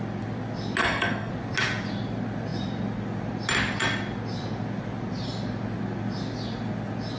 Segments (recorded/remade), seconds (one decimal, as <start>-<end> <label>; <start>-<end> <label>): 0.0-0.8 recorded; 0.8-1.3 remade; 1.3-7.2 recorded